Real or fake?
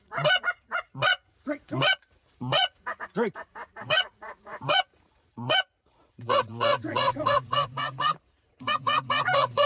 fake